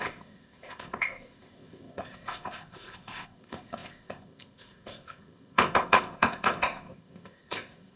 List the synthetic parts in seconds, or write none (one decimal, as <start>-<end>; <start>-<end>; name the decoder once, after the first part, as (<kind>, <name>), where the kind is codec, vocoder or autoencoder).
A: 0.0-8.0 (codec, ZipCodec)